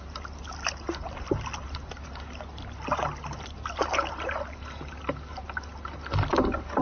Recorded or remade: recorded